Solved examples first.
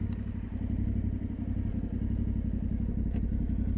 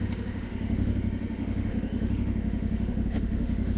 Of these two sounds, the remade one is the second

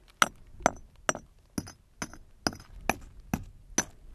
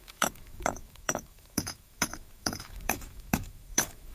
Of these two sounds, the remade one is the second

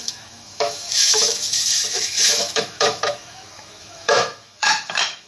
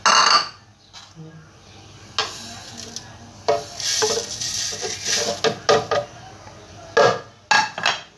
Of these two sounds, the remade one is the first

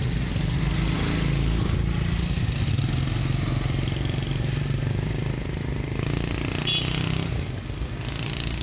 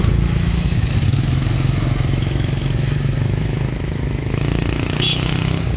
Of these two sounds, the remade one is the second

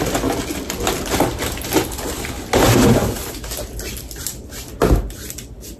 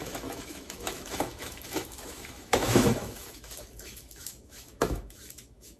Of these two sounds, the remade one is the second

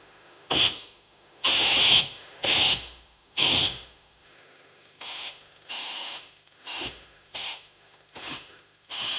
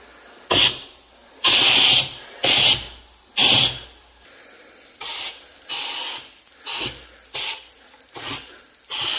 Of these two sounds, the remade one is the first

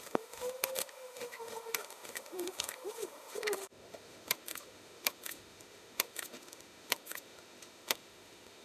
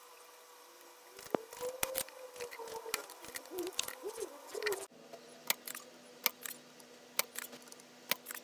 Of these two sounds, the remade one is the first